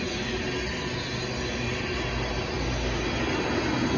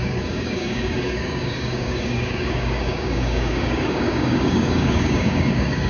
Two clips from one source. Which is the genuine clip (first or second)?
first